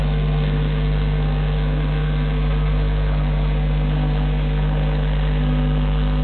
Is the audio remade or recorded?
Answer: remade